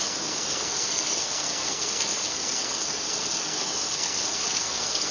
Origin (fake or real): fake